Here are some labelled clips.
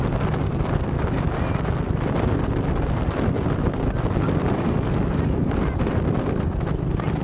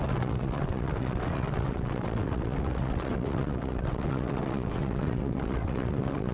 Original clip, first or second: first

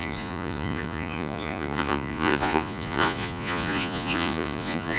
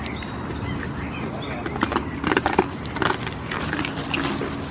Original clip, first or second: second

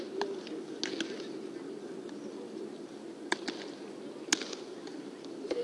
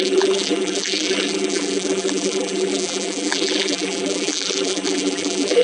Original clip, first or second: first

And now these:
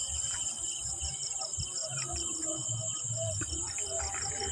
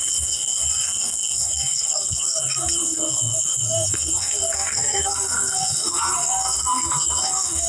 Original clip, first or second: first